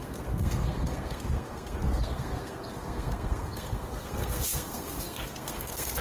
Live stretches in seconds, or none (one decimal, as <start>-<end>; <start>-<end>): none